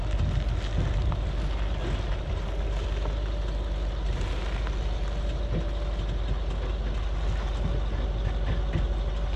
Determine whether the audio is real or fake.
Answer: real